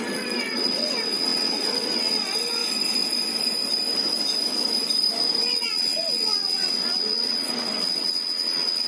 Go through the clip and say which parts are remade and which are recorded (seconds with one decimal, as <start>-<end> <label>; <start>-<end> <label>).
0.0-2.6 remade; 2.6-5.4 recorded; 5.4-8.9 remade